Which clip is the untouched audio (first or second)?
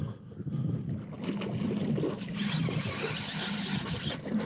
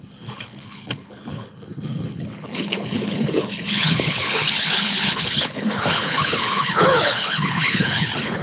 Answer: first